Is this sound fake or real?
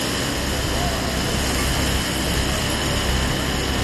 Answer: real